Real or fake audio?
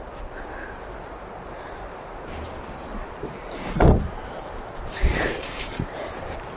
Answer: fake